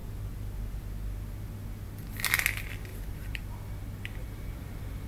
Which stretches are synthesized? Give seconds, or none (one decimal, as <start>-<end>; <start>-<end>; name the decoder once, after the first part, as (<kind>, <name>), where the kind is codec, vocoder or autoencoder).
2.9-3.4 (vocoder, BigVGAN v2); 4.2-5.1